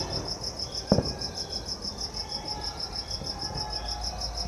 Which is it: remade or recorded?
recorded